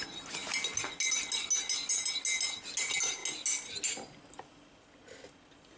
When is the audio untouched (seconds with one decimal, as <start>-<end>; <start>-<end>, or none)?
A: 0.0-5.8